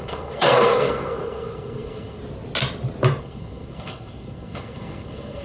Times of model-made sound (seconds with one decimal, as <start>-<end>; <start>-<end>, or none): 0.0-2.2; 3.2-5.4